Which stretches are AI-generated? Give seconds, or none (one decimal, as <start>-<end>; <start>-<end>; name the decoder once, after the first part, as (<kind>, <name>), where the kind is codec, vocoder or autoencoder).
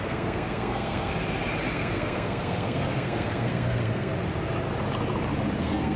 0.0-1.1 (codec, SNAC); 1.7-4.1; 5.6-6.0